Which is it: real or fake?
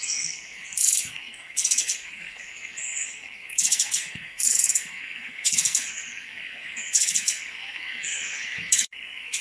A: fake